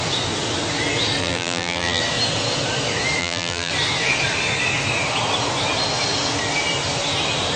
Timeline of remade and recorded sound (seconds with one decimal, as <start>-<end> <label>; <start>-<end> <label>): 0.0-1.2 recorded; 1.2-2.0 remade; 2.0-3.2 recorded; 3.2-3.7 remade; 3.7-7.6 recorded